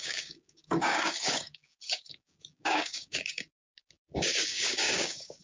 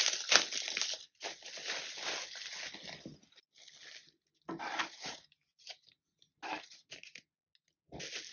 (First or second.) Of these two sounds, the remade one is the first